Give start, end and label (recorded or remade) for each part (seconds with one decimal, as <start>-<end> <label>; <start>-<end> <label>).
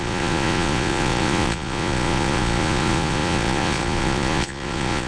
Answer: 0.0-5.1 remade